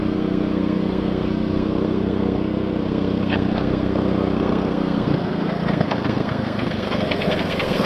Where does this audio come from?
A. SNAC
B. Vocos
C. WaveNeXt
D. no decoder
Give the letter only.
A